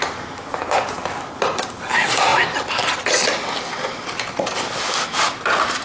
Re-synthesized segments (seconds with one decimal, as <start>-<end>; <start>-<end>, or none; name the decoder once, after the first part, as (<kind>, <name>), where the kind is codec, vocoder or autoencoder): none